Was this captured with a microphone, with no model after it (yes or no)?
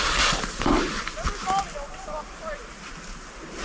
yes